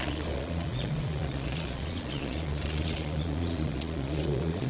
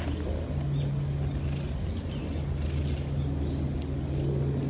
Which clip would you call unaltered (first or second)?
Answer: second